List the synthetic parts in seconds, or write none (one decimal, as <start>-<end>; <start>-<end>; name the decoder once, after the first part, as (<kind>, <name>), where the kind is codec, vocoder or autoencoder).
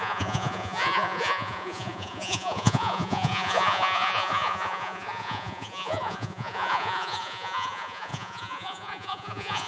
0.0-9.7 (vocoder, Vocos)